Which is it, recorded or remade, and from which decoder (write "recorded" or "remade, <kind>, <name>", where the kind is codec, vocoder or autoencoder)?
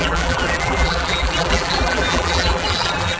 remade, vocoder, BigVGAN v2